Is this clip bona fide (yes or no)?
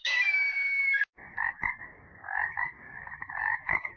no